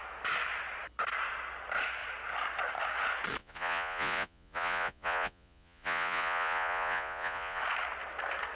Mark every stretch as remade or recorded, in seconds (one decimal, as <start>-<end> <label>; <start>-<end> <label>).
0.0-3.4 recorded; 3.4-7.6 remade; 7.6-8.6 recorded